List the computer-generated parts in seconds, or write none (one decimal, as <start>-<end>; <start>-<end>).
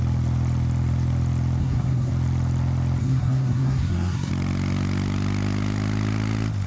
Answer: 1.6-2.1; 3.0-4.3